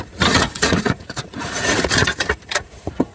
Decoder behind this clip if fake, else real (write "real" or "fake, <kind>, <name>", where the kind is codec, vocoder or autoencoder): fake, vocoder, Vocos